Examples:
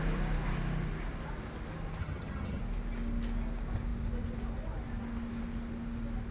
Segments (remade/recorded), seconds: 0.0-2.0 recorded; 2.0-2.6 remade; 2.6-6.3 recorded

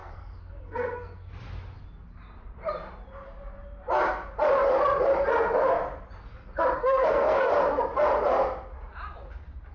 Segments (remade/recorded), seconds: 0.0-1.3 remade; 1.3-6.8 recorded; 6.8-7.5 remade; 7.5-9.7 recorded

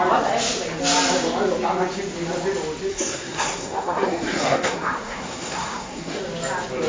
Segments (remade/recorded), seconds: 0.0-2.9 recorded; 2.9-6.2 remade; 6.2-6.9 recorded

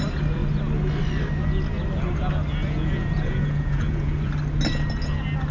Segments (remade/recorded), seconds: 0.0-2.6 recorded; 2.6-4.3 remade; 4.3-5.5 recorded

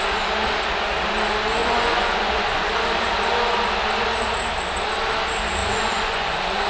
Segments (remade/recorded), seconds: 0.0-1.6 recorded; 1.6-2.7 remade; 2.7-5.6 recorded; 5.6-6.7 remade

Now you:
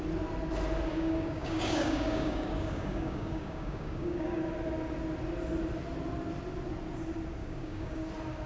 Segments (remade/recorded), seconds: 0.0-0.9 recorded; 0.9-4.4 remade; 4.4-7.4 recorded; 7.4-8.1 remade; 8.1-8.5 recorded

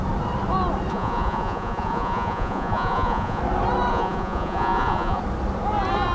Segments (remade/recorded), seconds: 0.0-0.9 recorded; 0.9-3.4 remade; 3.4-3.9 recorded; 3.9-5.2 remade; 5.2-6.1 recorded